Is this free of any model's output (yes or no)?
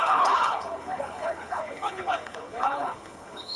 no